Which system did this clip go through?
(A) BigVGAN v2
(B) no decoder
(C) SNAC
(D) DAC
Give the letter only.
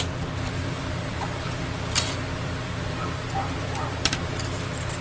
A